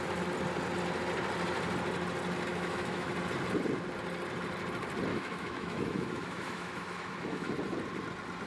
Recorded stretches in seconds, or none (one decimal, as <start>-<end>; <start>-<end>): 0.0-2.5; 3.1-5.1; 7.5-8.5